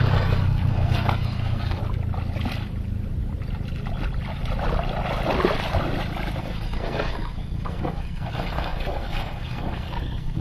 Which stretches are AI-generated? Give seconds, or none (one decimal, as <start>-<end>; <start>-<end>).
0.0-1.8; 6.4-10.4